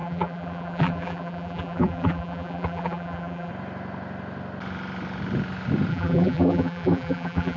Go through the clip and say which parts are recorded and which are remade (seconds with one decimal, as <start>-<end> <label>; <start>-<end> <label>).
0.0-3.5 remade; 3.5-5.9 recorded; 5.9-7.6 remade